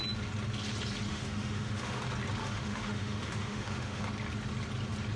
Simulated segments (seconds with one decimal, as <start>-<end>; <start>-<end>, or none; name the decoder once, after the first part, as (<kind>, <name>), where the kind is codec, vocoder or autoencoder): 1.1-2.0 (autoencoder, DAC-VAE); 2.4-4.0